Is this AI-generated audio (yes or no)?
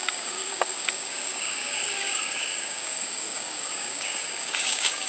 yes